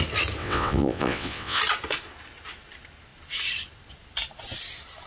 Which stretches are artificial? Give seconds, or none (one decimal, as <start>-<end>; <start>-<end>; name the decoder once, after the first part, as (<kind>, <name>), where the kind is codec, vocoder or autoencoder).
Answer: 0.4-1.6 (vocoder, WaveNeXt)